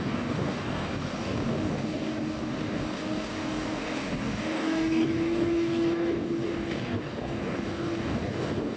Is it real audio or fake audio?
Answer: fake